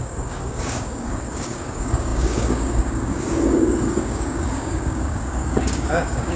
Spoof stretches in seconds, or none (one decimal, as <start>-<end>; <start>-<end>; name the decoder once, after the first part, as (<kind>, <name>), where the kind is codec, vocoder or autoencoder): 0.0-6.4 (codec, DAC)